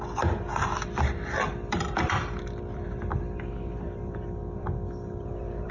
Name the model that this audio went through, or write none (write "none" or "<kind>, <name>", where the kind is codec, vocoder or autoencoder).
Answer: vocoder, BigVGAN v2